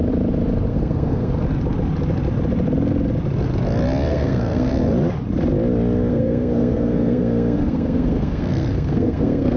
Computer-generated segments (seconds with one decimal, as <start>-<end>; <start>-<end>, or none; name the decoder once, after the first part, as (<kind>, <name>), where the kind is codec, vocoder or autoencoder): 0.7-1.3 (codec, SNAC); 4.1-4.7; 6.1-9.6